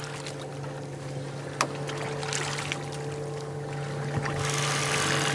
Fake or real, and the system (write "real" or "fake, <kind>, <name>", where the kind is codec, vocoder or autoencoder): real